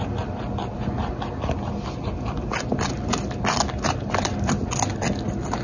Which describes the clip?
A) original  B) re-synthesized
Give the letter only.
A